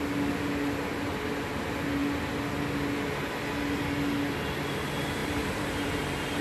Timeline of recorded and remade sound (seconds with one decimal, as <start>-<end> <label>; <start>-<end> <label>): 0.0-5.2 recorded; 5.2-6.4 remade